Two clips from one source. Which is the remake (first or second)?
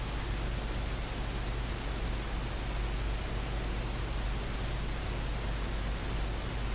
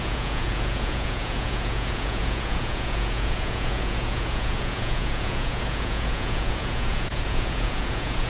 second